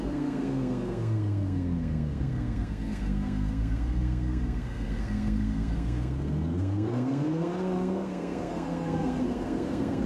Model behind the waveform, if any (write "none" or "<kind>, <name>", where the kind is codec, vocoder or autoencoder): codec, SNAC